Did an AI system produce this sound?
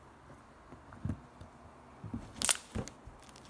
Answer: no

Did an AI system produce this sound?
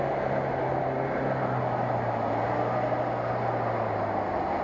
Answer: no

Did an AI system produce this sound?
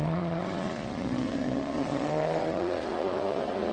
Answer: yes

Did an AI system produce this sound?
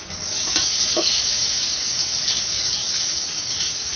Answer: yes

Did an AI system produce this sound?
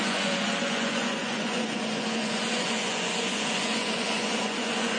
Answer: yes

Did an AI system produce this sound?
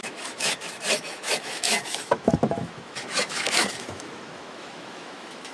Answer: yes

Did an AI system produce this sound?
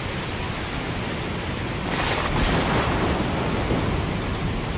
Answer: no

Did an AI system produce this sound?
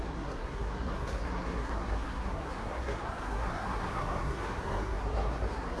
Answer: yes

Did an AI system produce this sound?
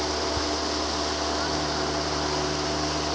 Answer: no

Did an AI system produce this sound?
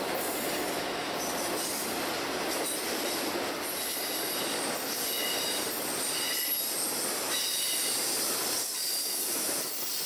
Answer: no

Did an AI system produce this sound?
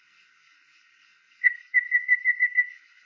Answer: yes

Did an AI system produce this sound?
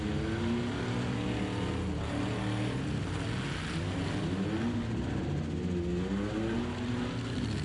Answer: no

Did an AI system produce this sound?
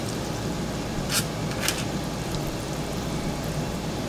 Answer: yes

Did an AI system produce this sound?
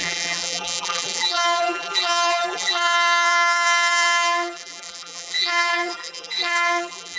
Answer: yes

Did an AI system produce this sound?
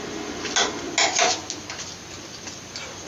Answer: no